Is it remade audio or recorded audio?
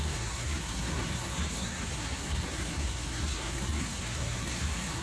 remade